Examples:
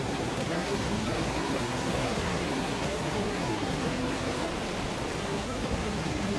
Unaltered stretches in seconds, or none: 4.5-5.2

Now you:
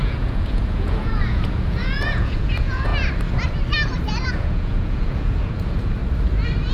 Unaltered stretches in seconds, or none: 2.9-4.3; 6.0-6.7

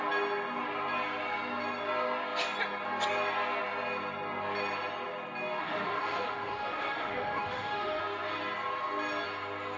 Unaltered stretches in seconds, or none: 0.0-5.6; 8.0-9.8

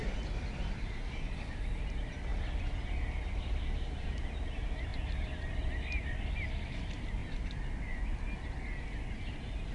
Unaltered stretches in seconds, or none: 1.7-2.3; 3.6-4.9; 5.8-7.2; 8.0-9.7

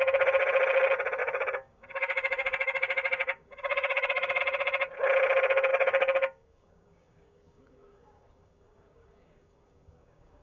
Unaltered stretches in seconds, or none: 0.0-1.2; 4.4-5.7

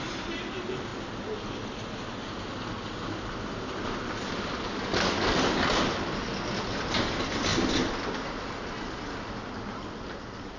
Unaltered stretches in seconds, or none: 0.0-10.6

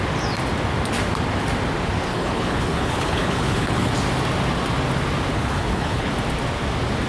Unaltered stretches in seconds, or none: 0.0-2.1; 3.9-5.3; 6.1-7.1

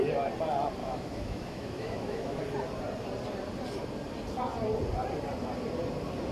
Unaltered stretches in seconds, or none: 0.0-0.8; 2.4-6.3